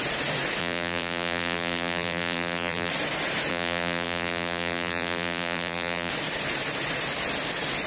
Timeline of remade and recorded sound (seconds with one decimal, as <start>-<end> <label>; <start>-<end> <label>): 0.0-0.6 recorded; 0.6-2.9 remade; 2.9-3.5 recorded; 3.5-6.1 remade; 6.1-7.9 recorded